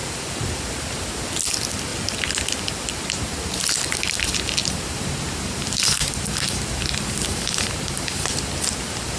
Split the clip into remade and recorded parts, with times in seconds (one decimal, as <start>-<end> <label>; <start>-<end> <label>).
0.0-4.6 recorded; 4.6-8.4 remade; 8.4-9.2 recorded